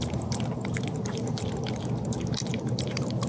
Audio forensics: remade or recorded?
remade